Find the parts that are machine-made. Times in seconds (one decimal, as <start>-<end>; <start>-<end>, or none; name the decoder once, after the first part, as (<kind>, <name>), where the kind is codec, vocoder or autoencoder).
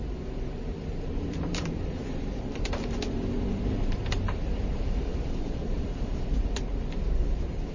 0.0-7.7 (vocoder, BigVGAN v2)